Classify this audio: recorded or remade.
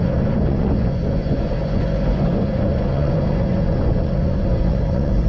remade